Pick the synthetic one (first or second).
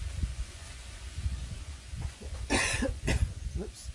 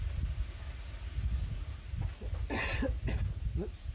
first